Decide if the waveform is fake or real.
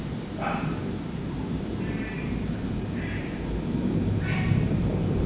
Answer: fake